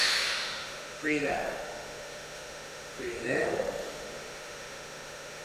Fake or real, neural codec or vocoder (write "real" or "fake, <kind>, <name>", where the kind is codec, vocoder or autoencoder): fake, autoencoder, DAC-VAE